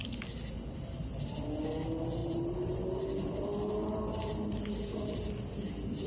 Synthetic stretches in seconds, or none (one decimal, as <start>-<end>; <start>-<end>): 2.2-2.8